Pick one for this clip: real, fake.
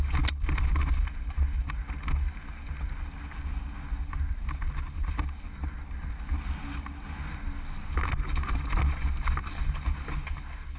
real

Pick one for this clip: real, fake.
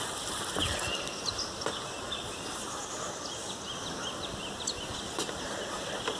real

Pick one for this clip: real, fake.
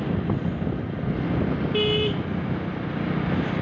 real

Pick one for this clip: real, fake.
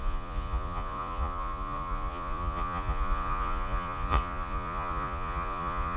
fake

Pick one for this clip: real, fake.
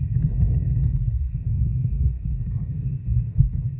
fake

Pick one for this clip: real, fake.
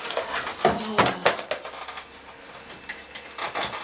real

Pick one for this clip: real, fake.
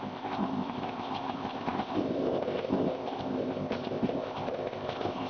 fake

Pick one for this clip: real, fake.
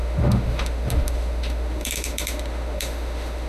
fake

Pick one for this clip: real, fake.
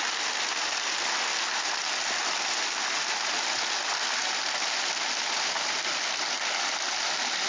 real